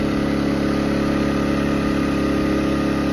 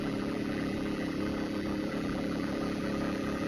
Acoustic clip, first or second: first